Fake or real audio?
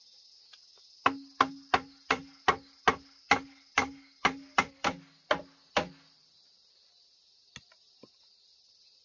real